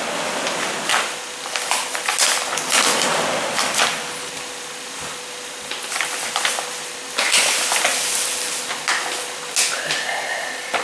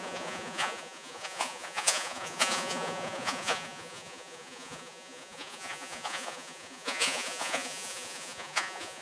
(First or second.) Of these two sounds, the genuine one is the first